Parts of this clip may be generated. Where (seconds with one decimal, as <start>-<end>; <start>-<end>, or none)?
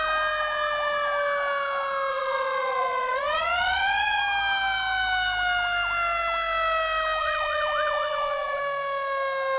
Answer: 2.1-4.2; 7.2-8.6